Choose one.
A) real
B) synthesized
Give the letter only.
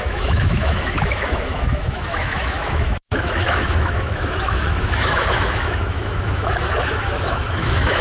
B